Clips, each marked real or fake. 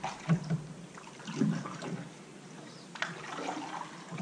real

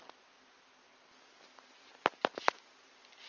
real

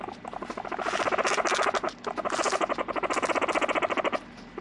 real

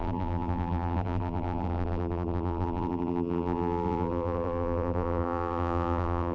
fake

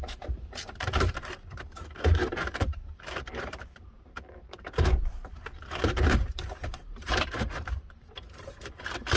fake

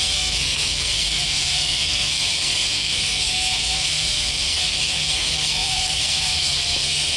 fake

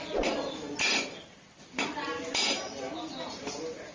real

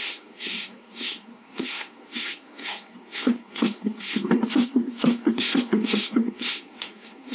fake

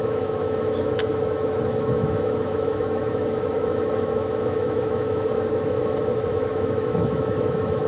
fake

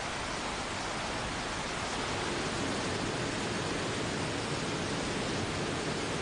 real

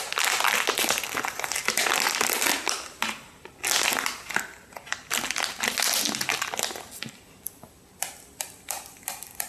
real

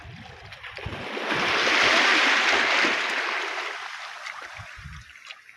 real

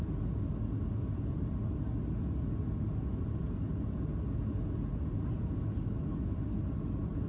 real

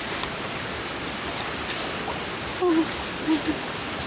real